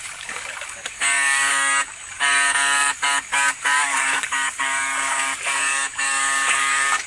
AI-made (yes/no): yes